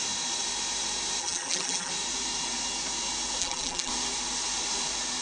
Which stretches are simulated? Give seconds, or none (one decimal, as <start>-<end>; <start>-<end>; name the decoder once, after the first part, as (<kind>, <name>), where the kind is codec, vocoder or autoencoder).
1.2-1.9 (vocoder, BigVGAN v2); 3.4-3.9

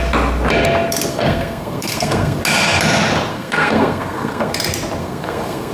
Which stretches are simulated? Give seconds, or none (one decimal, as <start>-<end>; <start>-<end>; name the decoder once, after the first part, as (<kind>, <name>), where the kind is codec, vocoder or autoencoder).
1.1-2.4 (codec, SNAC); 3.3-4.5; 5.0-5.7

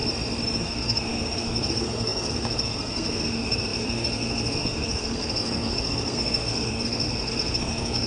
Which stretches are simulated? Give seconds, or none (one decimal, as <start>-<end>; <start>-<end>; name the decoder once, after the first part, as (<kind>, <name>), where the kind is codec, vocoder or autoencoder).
0.6-8.1 (codec, SNAC)

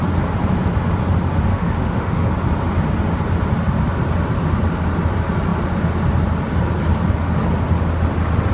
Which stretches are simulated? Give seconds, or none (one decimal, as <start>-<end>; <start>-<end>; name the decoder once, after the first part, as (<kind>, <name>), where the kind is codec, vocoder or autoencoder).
1.5-2.3 (autoencoder, DAC-VAE)

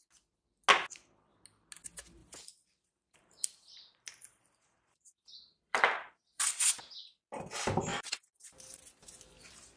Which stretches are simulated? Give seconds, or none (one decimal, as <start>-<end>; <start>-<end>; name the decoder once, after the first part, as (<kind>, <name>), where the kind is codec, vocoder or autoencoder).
2.2-6.7 (vocoder, BigVGAN v2); 7.9-8.8

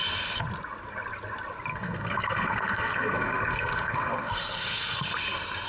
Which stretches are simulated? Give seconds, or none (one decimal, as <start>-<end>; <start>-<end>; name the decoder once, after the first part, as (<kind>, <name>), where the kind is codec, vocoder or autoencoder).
1.7-5.1 (codec, SNAC)

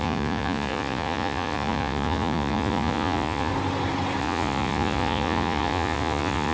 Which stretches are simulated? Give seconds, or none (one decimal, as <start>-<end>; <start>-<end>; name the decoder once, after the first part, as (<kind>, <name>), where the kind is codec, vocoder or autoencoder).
0.0-3.5 (vocoder, Vocos); 4.2-6.5

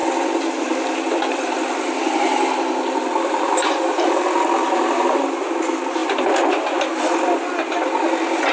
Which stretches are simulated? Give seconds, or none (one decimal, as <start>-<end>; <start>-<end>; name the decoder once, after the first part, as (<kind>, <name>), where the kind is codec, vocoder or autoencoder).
0.0-5.1 (vocoder, BigVGAN v2)